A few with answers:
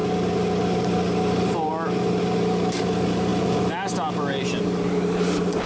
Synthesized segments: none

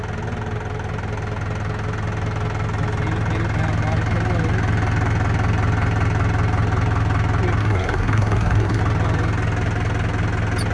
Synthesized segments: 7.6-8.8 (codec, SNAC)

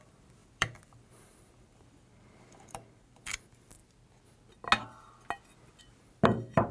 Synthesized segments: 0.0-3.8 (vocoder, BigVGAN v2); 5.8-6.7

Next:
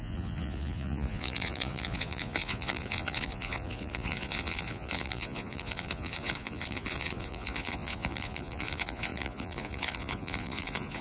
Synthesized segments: 0.0-11.0 (vocoder, Vocos)

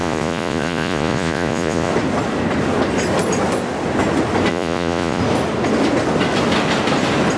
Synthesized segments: 0.0-1.9 (vocoder, Vocos); 4.5-5.2